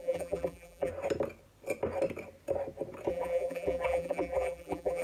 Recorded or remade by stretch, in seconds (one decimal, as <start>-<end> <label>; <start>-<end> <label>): 0.0-0.9 remade; 0.9-3.1 recorded; 3.1-5.0 remade